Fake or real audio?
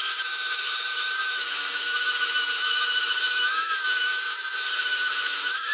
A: fake